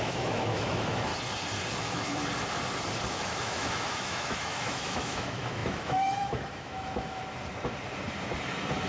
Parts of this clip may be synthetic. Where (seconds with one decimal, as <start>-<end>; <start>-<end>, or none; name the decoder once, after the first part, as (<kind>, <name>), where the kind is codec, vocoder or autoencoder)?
0.0-1.1 (autoencoder, DAC-VAE); 1.8-2.2; 3.1-7.2